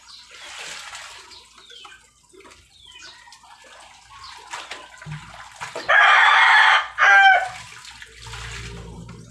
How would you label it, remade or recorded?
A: recorded